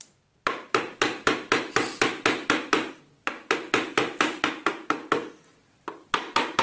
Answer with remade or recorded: recorded